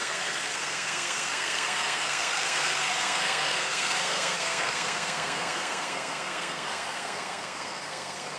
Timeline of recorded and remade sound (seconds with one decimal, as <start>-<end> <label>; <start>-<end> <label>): 0.0-8.4 remade